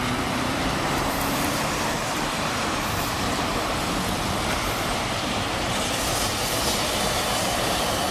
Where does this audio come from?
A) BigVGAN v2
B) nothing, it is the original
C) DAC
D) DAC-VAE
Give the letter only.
A